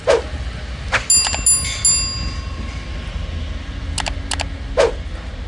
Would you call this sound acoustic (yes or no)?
yes